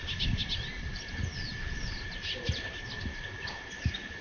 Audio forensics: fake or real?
real